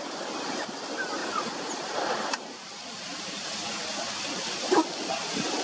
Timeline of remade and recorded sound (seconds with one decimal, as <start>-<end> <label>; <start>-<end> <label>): 0.0-1.2 recorded; 1.2-1.7 remade; 1.7-5.6 recorded